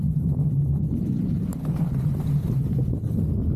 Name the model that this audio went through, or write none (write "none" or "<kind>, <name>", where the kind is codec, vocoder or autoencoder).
none